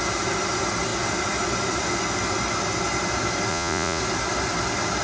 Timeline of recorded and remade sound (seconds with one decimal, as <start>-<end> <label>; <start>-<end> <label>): 0.0-3.5 recorded; 3.5-4.0 remade; 4.0-5.0 recorded